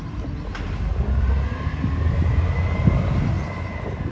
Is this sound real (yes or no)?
yes